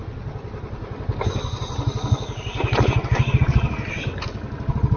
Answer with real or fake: real